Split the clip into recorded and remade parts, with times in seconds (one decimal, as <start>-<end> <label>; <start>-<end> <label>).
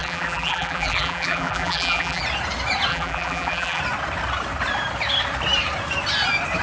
0.0-2.2 remade; 2.2-2.9 recorded; 2.9-3.8 remade; 3.8-6.6 recorded